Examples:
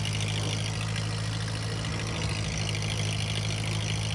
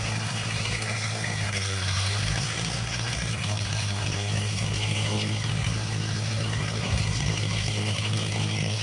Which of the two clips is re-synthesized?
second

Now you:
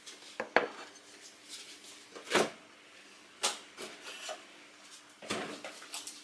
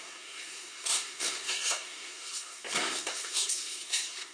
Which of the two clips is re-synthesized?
second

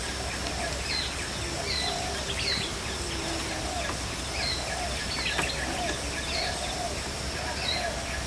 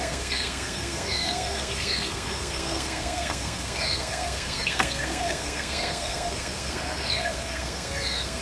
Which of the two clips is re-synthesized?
second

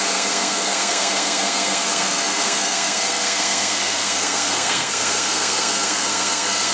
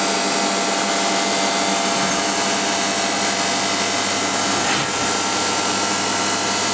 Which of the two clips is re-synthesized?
first